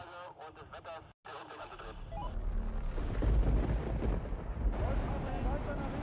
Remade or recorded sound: recorded